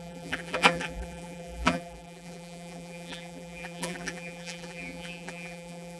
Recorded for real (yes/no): no